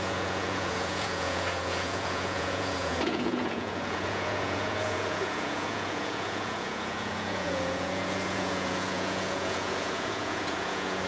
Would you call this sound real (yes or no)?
no